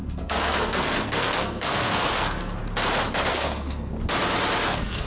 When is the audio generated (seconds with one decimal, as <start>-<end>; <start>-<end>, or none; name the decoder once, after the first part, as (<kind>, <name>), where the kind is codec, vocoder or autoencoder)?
0.0-2.6 (codec, SNAC); 3.3-3.9; 4.6-5.1